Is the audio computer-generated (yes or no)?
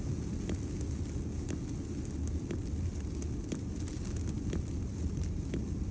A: no